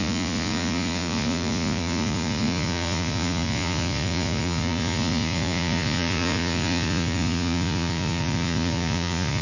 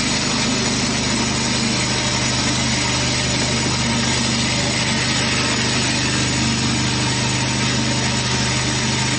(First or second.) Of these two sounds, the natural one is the second